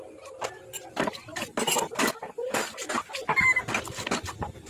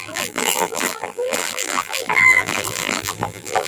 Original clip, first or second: first